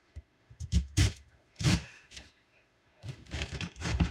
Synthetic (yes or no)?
yes